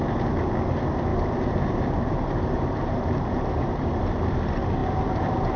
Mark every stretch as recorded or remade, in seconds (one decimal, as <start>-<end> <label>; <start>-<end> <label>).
0.0-1.1 recorded; 1.1-4.0 remade; 4.0-4.8 recorded; 4.8-5.6 remade